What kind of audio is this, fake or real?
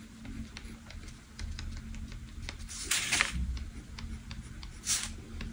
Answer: real